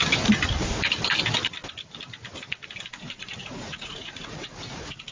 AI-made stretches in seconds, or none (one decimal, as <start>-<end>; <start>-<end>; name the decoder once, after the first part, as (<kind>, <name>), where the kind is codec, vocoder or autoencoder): 2.9-5.1 (vocoder, Vocos)